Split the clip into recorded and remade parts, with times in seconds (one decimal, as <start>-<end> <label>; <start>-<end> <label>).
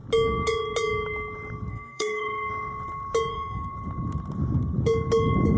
0.0-1.7 recorded; 1.7-2.5 remade; 2.5-3.3 recorded; 3.3-3.7 remade; 3.7-5.6 recorded